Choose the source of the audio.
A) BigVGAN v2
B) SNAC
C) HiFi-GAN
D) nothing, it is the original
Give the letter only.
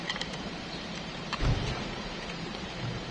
A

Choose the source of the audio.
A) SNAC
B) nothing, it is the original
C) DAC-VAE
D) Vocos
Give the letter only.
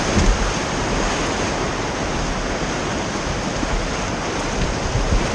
B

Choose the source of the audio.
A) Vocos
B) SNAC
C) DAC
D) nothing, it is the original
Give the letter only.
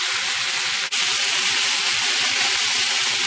D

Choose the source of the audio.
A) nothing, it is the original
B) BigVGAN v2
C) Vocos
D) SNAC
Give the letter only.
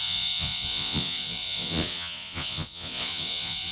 C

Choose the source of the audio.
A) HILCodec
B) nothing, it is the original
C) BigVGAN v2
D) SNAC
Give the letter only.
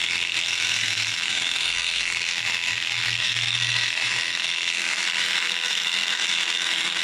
D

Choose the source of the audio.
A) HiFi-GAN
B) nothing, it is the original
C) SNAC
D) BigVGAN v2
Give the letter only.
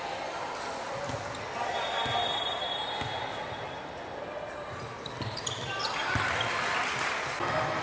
B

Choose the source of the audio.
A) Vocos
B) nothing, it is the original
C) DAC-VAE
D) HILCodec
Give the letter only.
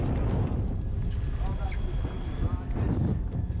B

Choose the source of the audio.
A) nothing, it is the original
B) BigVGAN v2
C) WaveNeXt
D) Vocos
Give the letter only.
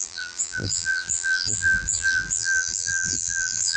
B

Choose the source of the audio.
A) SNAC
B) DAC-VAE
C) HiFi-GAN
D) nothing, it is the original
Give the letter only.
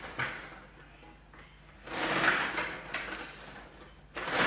D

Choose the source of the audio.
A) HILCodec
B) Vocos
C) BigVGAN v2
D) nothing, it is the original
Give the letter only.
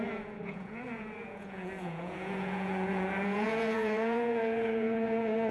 B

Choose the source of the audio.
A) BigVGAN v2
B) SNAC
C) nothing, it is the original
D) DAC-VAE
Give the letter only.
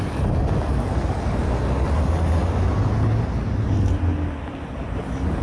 C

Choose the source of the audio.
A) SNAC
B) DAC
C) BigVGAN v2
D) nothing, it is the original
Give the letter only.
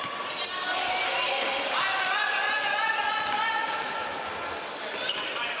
D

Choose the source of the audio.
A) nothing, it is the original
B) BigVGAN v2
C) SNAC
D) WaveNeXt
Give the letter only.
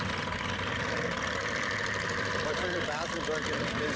B